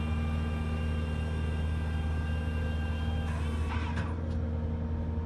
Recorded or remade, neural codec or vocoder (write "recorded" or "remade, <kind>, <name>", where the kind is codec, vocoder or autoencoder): recorded